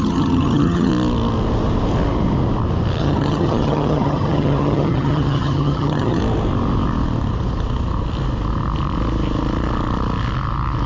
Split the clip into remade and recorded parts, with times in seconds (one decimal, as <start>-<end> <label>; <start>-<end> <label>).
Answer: 0.0-0.9 remade; 0.9-3.0 recorded; 3.0-6.2 remade; 6.2-10.9 recorded